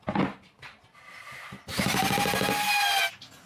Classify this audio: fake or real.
real